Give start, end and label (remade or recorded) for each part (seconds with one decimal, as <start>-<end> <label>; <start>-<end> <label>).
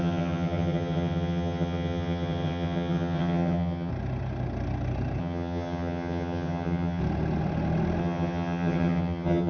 0.0-3.9 remade; 3.9-5.2 recorded; 5.2-7.0 remade; 7.0-8.0 recorded; 8.0-9.5 remade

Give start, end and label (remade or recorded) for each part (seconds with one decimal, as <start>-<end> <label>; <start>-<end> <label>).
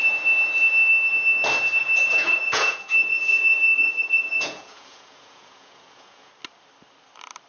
0.0-1.8 recorded; 1.8-6.3 remade; 6.3-7.5 recorded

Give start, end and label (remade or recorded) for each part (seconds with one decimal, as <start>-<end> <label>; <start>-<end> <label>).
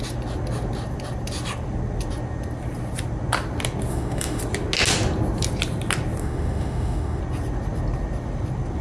0.0-3.9 recorded; 3.9-4.4 remade; 4.4-6.2 recorded; 6.2-7.2 remade; 7.2-8.8 recorded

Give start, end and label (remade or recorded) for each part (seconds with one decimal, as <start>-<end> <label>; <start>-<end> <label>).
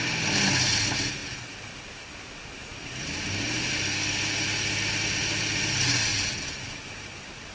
0.0-7.5 recorded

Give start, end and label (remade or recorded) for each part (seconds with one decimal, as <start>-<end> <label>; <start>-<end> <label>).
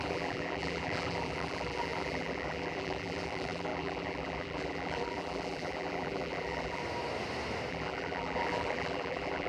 0.0-6.8 remade; 6.8-7.7 recorded; 7.7-9.5 remade